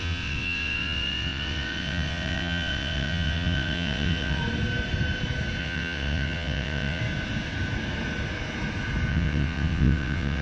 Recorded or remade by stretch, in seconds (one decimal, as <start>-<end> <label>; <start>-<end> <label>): 0.0-4.4 remade; 4.4-5.6 recorded; 5.6-7.0 remade; 7.0-9.1 recorded; 9.1-10.4 remade